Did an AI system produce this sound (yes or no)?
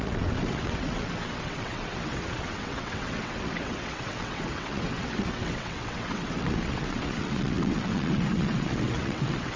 yes